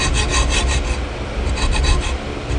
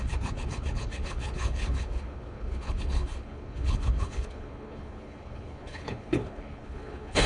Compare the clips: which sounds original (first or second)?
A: first